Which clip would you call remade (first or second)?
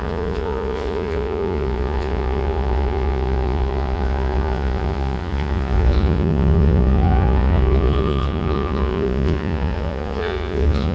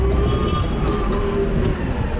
first